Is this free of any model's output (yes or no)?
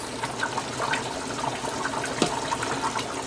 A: yes